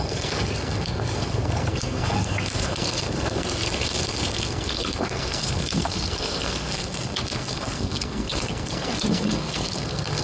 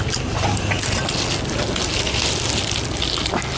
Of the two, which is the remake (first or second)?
first